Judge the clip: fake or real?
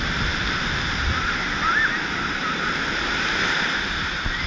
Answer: real